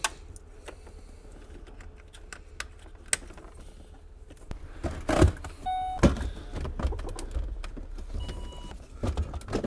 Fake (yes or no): no